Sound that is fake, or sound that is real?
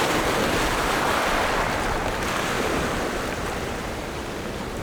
fake